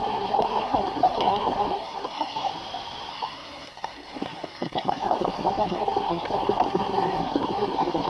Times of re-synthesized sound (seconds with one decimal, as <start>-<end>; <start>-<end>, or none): 0.0-2.5; 3.1-8.1